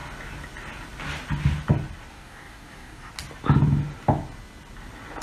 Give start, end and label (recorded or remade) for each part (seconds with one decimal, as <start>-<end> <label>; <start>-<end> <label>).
0.0-2.1 recorded; 2.1-3.1 remade; 3.1-5.2 recorded